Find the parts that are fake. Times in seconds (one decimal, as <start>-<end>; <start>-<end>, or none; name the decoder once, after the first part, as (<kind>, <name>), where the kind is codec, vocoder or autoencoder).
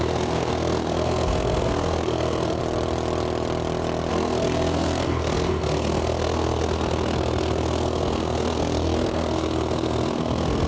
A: 0.0-2.6 (codec, SNAC); 4.1-10.7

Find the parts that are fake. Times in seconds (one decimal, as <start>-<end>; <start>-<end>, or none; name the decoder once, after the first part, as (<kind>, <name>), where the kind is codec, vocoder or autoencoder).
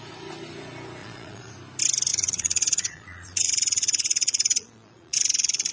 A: 1.0-1.5 (vocoder, Vocos); 2.1-5.7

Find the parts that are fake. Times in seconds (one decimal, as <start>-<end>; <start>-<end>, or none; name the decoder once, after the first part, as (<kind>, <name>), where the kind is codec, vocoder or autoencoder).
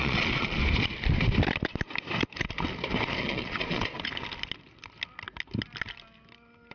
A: 0.0-0.6 (vocoder, Vocos); 3.2-4.1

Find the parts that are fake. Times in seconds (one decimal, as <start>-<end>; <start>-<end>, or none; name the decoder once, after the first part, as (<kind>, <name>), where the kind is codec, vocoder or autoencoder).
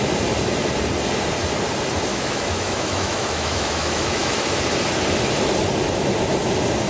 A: 2.1-4.6 (autoencoder, DAC-VAE)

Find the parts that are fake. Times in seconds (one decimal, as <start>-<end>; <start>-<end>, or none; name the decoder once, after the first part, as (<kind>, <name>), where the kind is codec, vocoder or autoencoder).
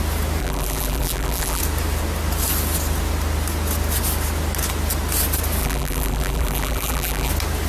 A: 0.4-1.6 (vocoder, BigVGAN v2); 5.6-7.3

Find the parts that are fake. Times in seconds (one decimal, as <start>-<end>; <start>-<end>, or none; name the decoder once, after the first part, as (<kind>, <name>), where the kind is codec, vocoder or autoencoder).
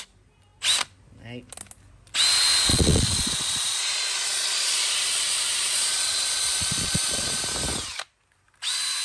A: 2.7-7.4 (vocoder, Vocos)